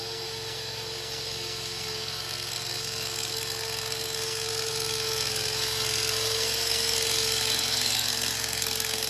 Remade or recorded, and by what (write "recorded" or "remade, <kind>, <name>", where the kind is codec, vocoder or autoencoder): remade, codec, SNAC